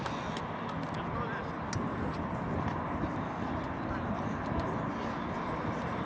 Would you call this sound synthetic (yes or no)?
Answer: no